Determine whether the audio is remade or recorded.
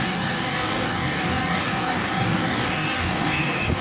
remade